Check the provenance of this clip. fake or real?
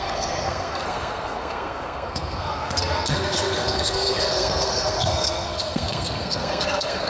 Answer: fake